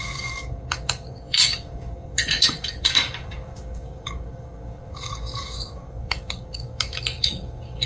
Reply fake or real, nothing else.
fake